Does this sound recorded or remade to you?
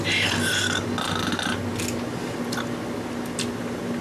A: recorded